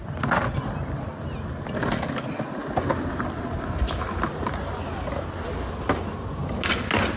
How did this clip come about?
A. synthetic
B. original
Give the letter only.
B